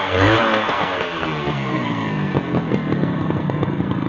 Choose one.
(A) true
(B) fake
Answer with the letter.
B